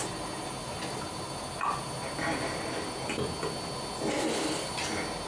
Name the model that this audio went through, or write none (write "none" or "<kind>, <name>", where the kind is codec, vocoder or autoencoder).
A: none